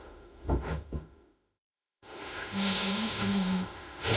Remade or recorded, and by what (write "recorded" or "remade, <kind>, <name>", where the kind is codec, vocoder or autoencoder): remade, autoencoder, DAC-VAE